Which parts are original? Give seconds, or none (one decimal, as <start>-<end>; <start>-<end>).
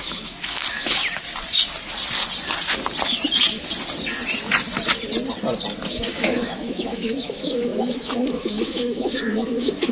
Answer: 1.0-5.9